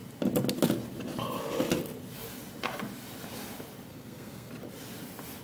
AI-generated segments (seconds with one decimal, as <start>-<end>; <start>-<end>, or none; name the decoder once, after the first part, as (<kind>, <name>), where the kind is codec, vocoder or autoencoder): 3.9-4.5 (codec, SNAC)